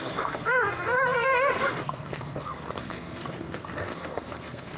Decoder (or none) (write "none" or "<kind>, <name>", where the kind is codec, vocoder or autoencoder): codec, SNAC